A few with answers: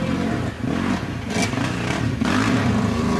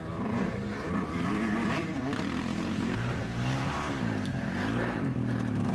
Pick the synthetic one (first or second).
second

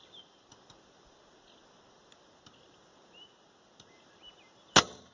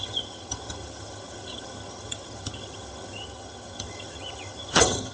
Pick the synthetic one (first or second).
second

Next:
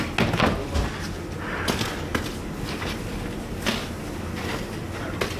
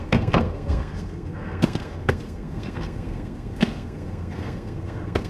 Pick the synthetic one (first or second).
second